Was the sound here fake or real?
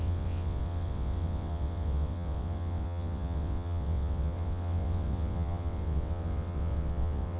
fake